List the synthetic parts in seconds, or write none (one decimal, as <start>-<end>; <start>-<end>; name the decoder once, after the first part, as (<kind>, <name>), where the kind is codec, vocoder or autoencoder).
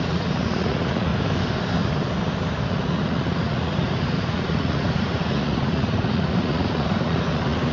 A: 0.0-1.1 (vocoder, Vocos); 2.7-7.7